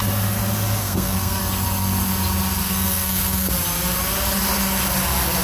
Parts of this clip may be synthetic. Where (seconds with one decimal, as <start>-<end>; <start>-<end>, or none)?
0.8-1.4; 2.6-3.5